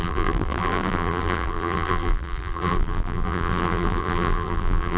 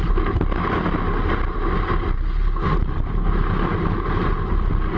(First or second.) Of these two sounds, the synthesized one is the first